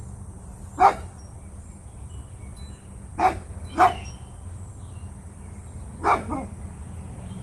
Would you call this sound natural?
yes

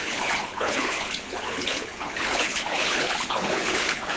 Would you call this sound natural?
no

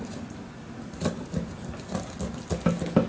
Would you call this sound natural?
yes